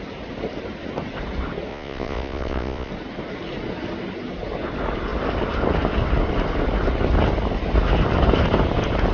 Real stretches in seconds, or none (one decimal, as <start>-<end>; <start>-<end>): 0.0-1.7; 2.9-9.1